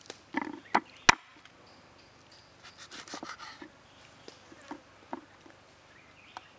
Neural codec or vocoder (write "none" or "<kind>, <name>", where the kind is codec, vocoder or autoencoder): none